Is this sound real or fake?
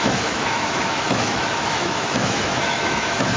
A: fake